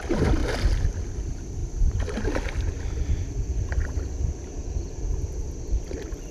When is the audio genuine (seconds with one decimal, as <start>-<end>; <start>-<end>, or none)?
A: 0.0-6.3